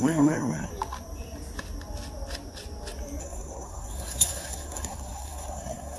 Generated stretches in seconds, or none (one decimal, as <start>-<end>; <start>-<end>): 0.0-0.7; 3.2-6.0